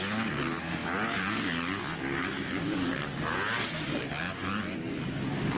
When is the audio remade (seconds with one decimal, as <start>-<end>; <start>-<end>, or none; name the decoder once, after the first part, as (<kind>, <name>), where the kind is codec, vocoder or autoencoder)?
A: none